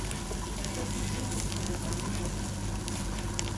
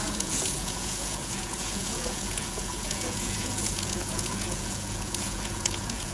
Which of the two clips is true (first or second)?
first